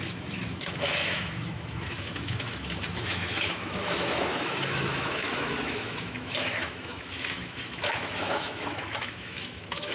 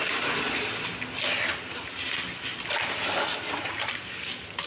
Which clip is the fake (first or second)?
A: first